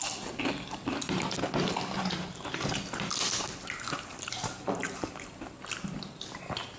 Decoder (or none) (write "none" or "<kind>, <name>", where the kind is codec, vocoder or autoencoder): none